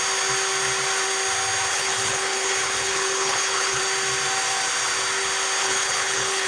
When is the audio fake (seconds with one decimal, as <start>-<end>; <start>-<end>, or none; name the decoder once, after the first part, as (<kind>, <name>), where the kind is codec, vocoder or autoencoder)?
1.7-3.8 (codec, HILCodec); 5.6-6.5